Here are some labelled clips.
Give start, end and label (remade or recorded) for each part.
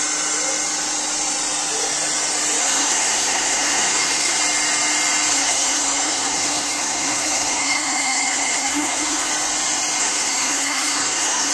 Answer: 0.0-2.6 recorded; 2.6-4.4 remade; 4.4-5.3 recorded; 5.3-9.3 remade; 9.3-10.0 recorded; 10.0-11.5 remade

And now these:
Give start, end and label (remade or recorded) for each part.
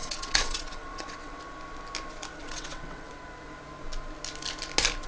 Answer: 0.0-1.4 remade; 1.4-2.4 recorded; 2.4-3.1 remade; 3.1-5.1 recorded